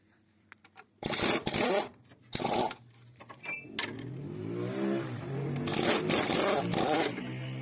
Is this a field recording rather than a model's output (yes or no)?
yes